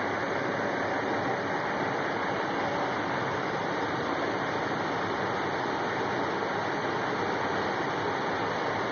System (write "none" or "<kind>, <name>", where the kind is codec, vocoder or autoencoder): none